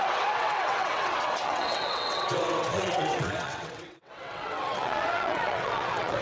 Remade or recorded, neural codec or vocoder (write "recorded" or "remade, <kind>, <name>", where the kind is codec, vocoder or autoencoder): remade, vocoder, WaveNeXt